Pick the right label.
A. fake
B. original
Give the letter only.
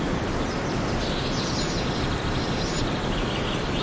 B